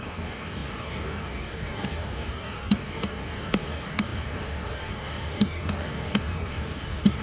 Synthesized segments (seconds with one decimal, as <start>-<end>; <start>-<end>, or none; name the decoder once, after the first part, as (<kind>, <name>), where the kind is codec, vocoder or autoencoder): 0.0-7.2 (codec, DAC)